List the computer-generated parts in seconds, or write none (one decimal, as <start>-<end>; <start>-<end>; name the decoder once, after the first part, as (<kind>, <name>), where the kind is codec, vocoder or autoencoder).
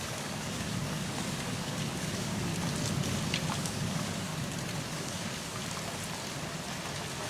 0.0-2.5 (codec, DAC); 3.5-4.3; 4.9-5.6